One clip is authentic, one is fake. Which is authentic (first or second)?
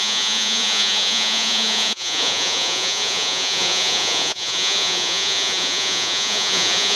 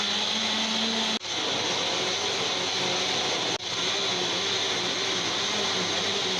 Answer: second